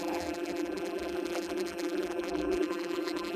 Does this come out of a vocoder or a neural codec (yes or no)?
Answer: yes